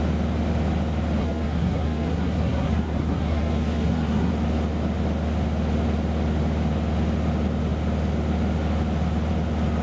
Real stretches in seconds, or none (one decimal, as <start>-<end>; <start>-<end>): 0.0-1.2; 4.3-9.8